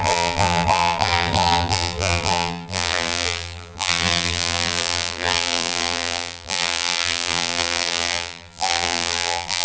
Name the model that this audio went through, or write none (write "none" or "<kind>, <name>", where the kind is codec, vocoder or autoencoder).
vocoder, BigVGAN v2